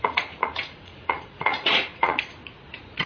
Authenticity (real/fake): fake